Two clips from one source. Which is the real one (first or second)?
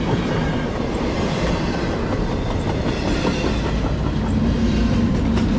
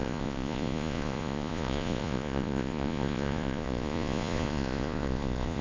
first